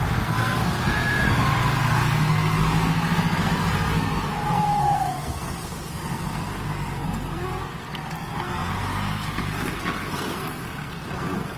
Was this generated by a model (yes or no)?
yes